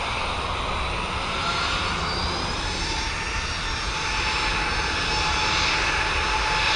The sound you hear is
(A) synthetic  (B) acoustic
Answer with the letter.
B